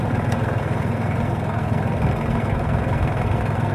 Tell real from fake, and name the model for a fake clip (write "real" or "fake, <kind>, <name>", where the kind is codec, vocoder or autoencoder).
fake, codec, SNAC